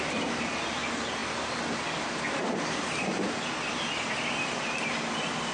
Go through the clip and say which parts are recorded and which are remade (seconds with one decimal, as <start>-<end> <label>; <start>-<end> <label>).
0.0-5.5 recorded